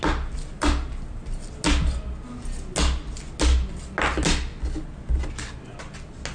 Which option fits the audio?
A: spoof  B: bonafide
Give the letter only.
B